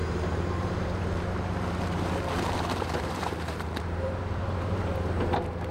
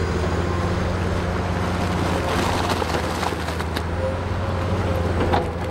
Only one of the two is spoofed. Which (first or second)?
first